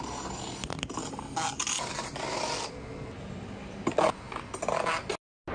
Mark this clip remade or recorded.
recorded